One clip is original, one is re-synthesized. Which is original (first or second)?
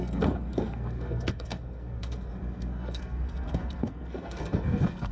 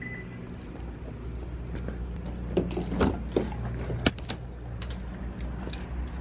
second